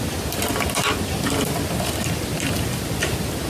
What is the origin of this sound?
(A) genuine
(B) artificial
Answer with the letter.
A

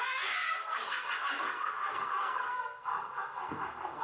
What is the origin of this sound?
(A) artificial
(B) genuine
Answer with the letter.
A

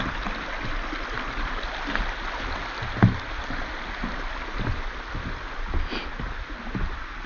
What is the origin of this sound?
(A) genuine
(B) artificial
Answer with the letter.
A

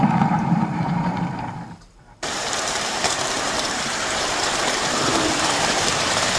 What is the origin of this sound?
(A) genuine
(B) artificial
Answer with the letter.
B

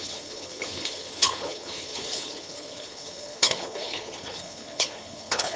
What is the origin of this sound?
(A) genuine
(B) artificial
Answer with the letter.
B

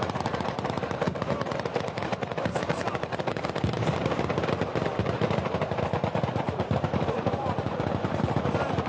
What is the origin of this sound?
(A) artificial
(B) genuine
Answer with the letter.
A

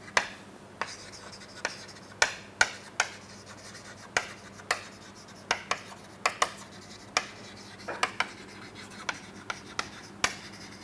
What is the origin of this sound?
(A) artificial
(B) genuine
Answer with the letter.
B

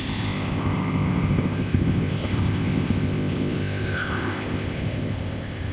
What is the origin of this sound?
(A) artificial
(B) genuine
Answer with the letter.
A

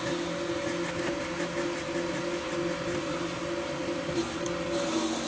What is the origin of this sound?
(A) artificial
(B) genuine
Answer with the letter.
B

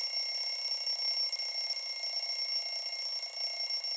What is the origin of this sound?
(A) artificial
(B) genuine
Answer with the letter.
B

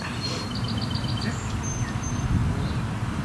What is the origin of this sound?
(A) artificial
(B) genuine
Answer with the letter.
B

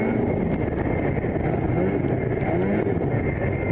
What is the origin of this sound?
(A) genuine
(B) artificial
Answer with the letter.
A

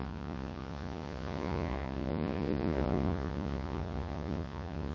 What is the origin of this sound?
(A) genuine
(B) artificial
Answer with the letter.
B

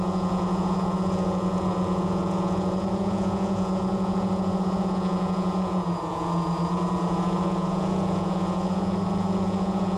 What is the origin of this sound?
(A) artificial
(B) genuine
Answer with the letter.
A